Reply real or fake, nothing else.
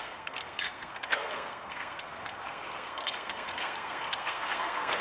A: fake